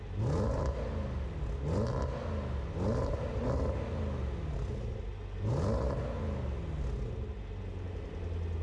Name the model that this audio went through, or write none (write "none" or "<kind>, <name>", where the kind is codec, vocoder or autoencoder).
none